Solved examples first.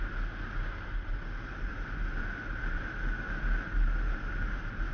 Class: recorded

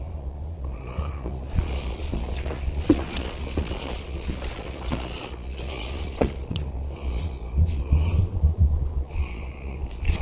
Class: remade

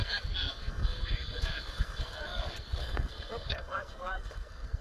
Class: remade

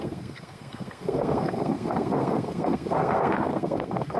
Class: remade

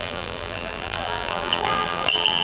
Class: remade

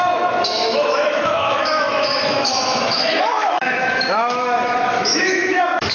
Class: remade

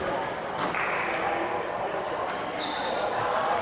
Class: recorded